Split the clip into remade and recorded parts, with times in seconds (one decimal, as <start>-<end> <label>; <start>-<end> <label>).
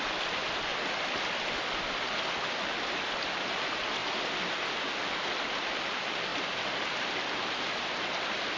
0.0-0.7 recorded; 0.7-1.8 remade; 1.8-4.0 recorded; 4.0-5.3 remade; 5.3-8.6 recorded